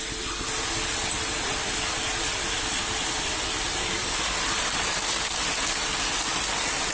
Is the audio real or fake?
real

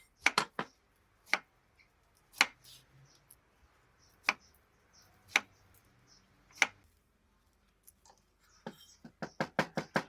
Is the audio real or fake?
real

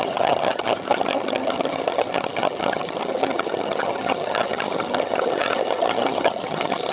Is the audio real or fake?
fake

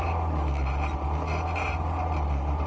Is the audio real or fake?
real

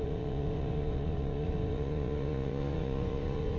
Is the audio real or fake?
fake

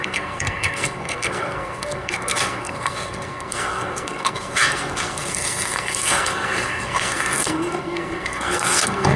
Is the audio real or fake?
fake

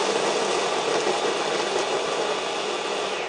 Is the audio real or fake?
real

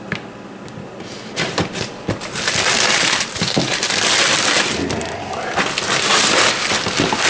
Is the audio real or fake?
real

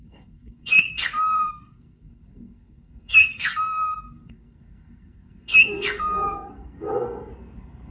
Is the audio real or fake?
fake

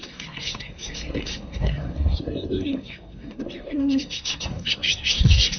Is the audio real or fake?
fake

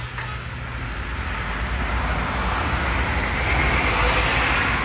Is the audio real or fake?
real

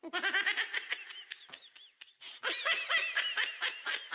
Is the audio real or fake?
real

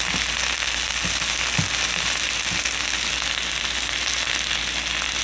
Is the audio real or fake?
real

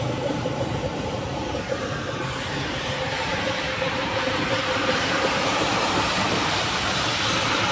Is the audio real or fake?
fake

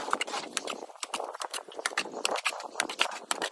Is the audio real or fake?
fake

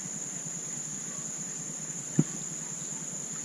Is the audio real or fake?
real